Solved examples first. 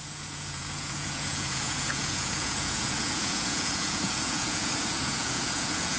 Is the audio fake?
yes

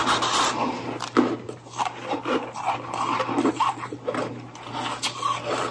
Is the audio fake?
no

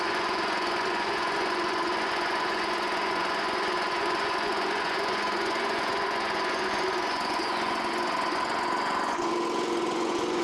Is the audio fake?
yes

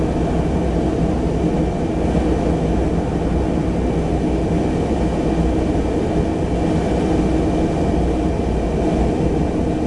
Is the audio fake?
no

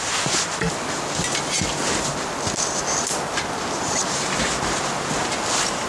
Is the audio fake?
no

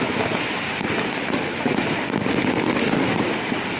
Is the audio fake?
no